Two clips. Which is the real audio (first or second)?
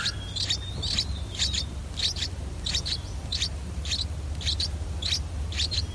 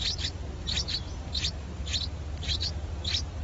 second